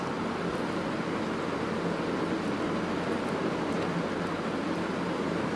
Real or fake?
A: real